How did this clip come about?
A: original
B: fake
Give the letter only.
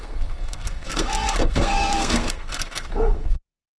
B